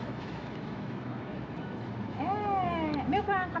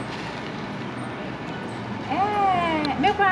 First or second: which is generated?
first